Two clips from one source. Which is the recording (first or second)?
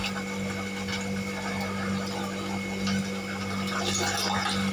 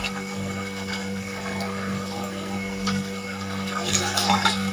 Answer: first